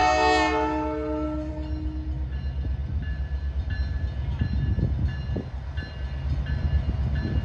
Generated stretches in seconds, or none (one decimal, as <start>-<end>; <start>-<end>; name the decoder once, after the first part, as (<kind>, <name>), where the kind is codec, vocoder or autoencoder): none